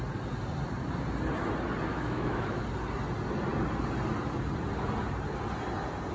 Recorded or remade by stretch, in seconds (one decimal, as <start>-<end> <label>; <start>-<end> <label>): 0.0-1.9 recorded; 1.9-2.6 remade; 2.6-6.1 recorded